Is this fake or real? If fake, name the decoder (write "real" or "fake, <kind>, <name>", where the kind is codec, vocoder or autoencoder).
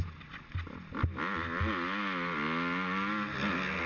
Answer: real